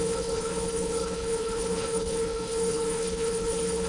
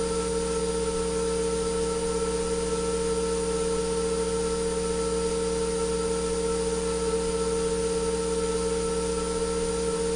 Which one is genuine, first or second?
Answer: second